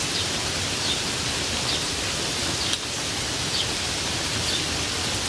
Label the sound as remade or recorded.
remade